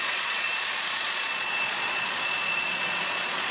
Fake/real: fake